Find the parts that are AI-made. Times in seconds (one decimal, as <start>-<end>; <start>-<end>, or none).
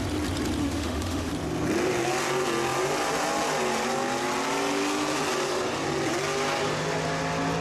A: 0.6-1.3